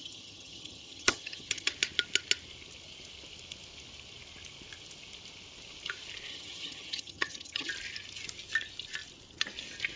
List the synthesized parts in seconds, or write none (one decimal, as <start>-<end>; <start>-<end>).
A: 0.0-1.7; 6.3-7.7